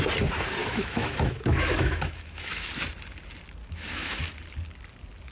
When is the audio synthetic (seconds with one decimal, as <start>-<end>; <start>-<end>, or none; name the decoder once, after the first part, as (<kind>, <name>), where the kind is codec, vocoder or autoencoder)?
0.6-2.7 (autoencoder, DAC-VAE); 3.6-4.3